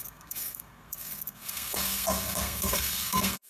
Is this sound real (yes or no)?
no